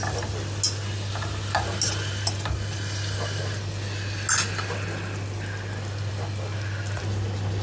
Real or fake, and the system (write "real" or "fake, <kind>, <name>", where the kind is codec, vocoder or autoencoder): real